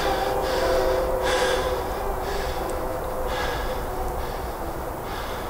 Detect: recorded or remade recorded